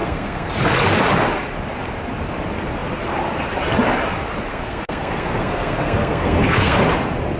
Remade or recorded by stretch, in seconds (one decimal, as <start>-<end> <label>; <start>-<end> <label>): 0.0-0.5 remade; 0.5-4.5 recorded; 4.5-6.8 remade; 6.8-7.4 recorded